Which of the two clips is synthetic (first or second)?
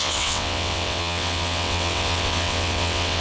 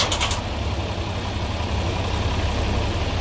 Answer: first